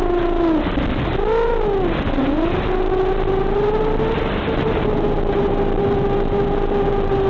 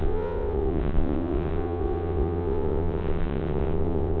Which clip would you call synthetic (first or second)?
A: second